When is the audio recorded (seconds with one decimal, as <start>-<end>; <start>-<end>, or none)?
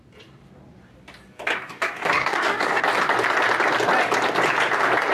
0.0-1.5; 2.8-5.1